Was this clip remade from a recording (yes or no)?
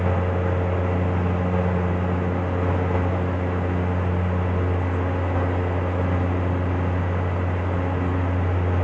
no